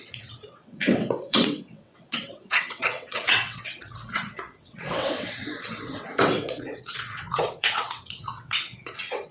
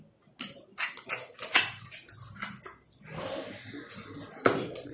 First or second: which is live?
second